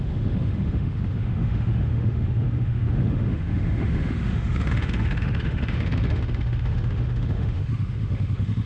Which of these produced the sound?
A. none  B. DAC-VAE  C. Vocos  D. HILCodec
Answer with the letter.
B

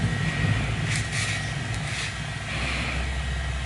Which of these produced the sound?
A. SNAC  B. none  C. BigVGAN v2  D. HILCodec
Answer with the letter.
B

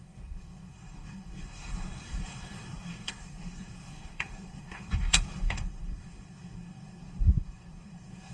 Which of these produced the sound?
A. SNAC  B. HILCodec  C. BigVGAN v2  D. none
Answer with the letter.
A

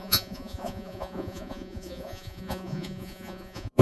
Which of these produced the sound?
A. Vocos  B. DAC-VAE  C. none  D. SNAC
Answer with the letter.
A